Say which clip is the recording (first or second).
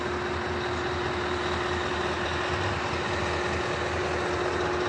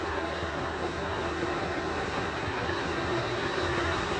first